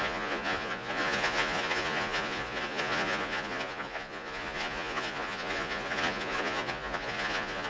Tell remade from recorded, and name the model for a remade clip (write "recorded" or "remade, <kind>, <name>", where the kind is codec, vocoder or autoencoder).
remade, vocoder, Vocos